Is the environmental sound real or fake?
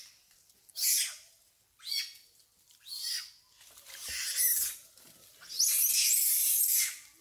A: real